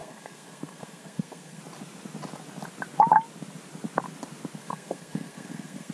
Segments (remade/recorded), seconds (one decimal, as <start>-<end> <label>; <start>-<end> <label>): 0.0-1.6 remade; 1.6-4.6 recorded; 4.6-5.9 remade